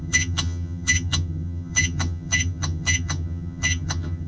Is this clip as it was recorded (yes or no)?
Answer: no